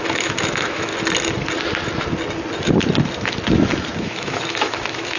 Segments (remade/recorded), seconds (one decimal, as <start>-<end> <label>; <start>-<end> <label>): 0.0-0.9 remade; 0.9-4.0 recorded; 4.0-5.2 remade